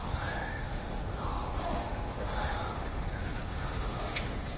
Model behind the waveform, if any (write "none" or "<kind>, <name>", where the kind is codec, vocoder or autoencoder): autoencoder, DAC-VAE